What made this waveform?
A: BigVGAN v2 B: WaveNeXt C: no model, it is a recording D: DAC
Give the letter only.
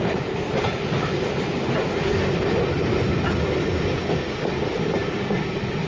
C